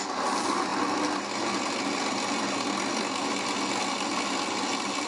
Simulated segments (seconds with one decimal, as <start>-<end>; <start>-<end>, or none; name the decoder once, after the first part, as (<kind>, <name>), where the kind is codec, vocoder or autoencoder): none